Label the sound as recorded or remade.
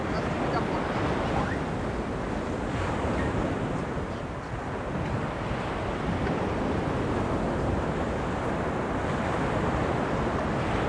recorded